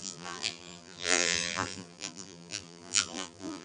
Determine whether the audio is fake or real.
fake